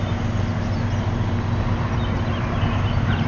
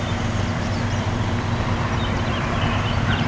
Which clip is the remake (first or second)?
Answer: second